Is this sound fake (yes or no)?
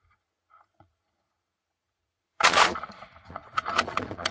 yes